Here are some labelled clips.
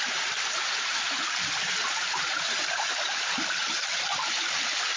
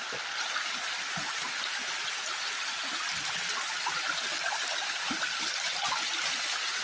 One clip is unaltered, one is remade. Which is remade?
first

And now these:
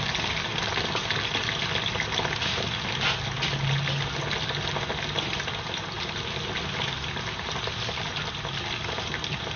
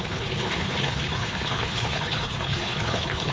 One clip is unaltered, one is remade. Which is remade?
second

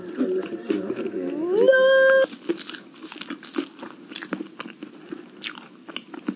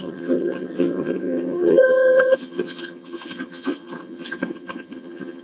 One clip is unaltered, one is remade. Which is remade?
second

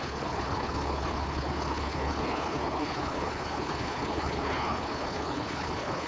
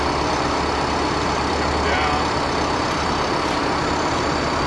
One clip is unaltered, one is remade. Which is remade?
first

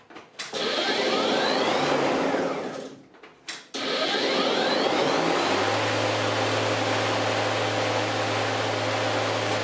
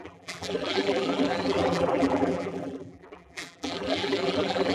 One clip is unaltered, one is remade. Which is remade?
second